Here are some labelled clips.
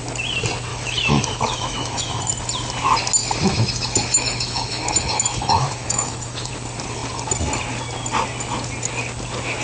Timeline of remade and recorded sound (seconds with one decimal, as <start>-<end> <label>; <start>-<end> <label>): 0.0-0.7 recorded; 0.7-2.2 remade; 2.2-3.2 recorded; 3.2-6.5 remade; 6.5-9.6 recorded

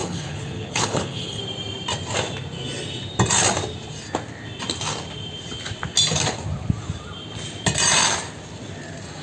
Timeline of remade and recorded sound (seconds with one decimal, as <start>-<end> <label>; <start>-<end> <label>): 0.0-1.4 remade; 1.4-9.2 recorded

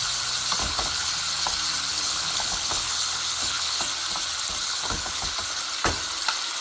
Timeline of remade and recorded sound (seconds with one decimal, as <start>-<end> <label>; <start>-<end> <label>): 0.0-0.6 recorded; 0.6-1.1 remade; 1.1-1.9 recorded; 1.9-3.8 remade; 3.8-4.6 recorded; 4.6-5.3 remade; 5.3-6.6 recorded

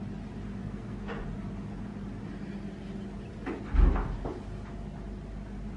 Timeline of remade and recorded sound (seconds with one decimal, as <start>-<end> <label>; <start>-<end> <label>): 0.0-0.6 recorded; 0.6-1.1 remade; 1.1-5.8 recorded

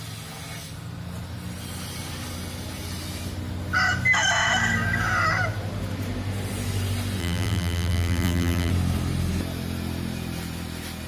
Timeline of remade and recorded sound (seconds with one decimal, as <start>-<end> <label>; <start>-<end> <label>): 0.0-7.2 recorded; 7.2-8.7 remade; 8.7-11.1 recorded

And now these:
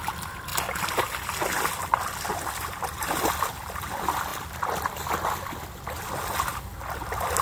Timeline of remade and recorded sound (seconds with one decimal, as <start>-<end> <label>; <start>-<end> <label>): 0.0-7.4 recorded